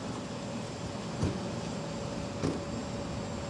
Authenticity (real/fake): real